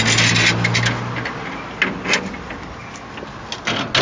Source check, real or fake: real